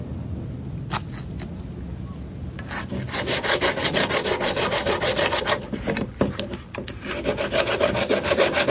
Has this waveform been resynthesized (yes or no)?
no